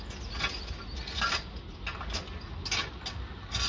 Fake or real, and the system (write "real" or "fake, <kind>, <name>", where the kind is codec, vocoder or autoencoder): real